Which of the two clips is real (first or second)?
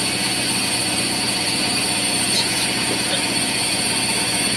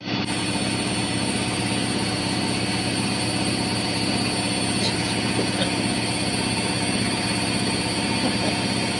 second